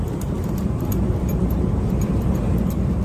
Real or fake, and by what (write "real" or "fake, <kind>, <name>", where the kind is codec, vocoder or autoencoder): fake, vocoder, BigVGAN v2